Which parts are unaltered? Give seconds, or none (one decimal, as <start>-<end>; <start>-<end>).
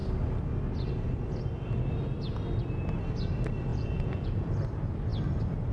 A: 0.0-3.7; 4.5-5.7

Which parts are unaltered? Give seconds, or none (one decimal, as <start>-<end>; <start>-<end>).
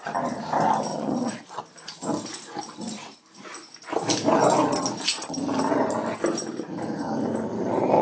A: 0.0-0.9; 1.6-8.0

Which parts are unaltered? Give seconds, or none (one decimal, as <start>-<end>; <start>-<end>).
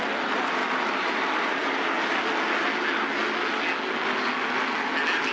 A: 0.0-5.3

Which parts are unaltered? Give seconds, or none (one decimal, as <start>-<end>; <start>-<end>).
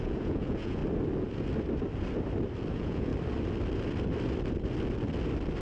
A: 0.8-2.7; 3.1-5.6